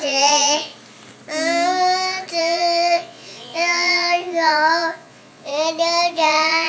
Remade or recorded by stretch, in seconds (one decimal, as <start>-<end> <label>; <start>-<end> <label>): 0.0-0.7 remade; 0.7-2.4 recorded; 2.4-5.5 remade; 5.5-6.1 recorded; 6.1-6.7 remade